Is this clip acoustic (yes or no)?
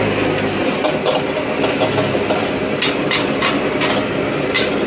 yes